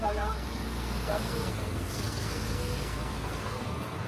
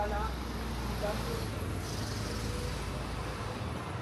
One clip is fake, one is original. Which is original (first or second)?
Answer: second